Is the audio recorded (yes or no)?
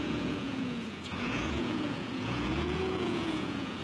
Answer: no